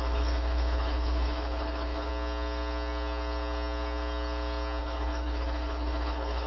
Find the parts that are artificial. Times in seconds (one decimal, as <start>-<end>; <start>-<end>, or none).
0.0-2.1; 4.8-6.5